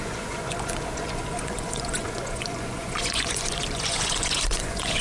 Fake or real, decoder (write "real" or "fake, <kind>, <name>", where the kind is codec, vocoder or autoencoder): fake, vocoder, Vocos